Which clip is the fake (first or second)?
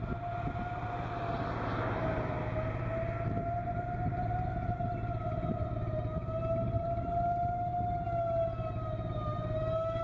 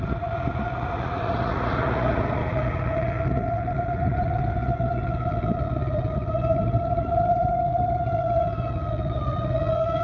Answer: second